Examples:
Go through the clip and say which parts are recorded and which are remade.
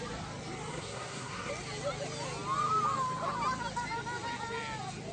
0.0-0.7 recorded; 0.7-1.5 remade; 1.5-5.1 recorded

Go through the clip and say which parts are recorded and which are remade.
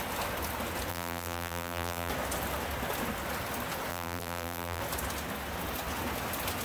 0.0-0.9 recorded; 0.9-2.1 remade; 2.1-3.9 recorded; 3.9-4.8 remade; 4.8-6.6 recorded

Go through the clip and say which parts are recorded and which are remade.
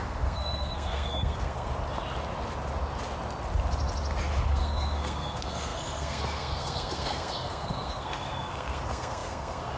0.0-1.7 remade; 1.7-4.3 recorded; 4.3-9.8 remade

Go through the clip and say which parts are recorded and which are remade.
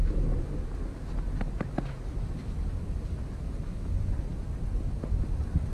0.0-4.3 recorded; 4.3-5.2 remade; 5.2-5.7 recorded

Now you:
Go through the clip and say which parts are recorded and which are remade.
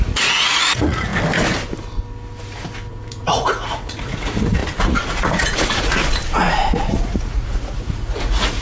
0.0-1.1 remade; 1.1-2.9 recorded; 2.9-8.6 remade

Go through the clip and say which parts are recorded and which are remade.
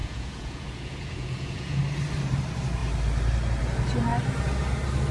0.0-1.8 remade; 1.8-5.1 recorded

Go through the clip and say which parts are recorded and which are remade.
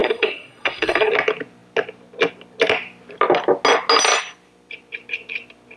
0.0-1.1 remade; 1.1-5.8 recorded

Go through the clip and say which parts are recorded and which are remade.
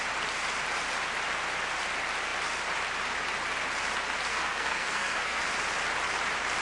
0.0-4.3 recorded; 4.3-5.4 remade; 5.4-6.6 recorded